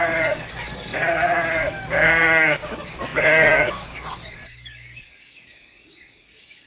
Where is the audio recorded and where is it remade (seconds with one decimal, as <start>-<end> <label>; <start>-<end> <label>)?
0.0-6.7 remade